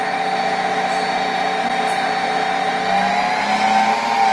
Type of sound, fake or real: real